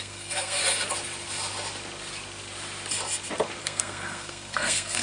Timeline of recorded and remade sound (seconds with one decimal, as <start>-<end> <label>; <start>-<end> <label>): 0.0-0.6 remade; 0.6-3.6 recorded; 3.6-5.0 remade